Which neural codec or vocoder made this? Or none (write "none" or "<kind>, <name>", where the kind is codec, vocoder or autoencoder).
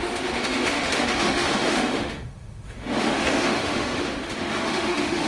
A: autoencoder, DAC-VAE